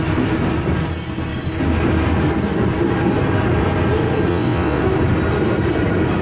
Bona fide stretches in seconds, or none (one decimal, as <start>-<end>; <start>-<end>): 0.0-4.3; 4.8-6.2